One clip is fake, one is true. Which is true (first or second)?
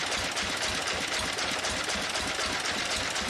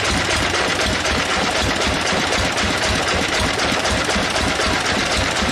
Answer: first